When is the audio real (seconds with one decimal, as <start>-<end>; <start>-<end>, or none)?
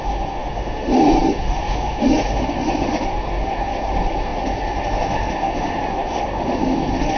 none